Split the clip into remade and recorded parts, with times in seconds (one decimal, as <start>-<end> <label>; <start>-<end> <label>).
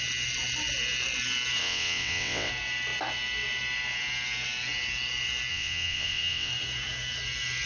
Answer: 0.0-1.6 recorded; 1.6-2.5 remade; 2.5-5.5 recorded; 5.5-6.5 remade; 6.5-7.7 recorded